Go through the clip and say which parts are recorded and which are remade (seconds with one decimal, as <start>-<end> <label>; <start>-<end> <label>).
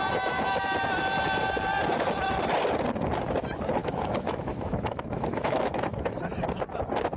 0.0-3.8 recorded; 3.8-6.1 remade; 6.1-7.2 recorded